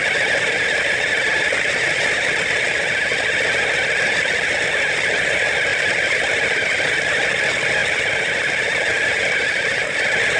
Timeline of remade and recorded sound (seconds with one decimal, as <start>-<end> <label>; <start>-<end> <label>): 0.0-5.7 recorded; 5.7-6.5 remade; 6.5-7.8 recorded; 7.8-8.6 remade; 8.6-10.4 recorded